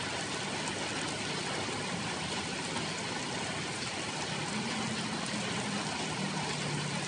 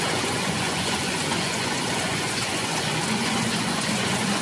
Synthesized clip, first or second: second